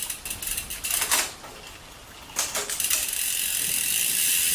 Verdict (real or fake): real